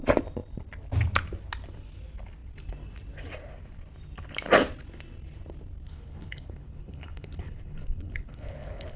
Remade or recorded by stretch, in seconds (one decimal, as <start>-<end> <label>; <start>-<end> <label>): 0.0-5.9 recorded; 5.9-9.0 remade